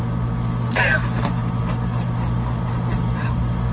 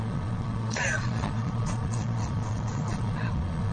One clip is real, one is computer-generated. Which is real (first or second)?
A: first